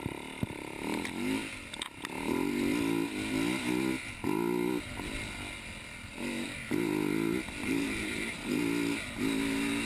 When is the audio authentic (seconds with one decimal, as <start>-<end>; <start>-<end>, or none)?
0.0-7.6; 8.6-9.9